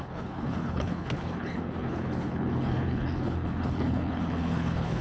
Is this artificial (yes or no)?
yes